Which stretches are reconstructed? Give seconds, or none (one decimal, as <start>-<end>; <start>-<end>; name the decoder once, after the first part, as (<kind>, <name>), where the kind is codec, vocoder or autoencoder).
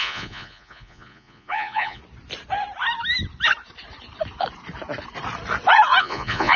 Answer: 0.0-2.0 (vocoder, Vocos); 6.0-6.6